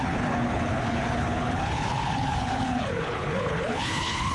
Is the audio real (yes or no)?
no